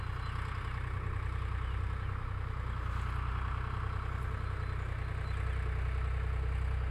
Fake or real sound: real